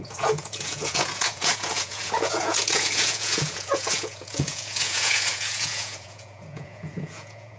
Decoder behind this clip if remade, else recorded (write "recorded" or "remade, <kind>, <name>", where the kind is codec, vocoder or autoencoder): remade, vocoder, Vocos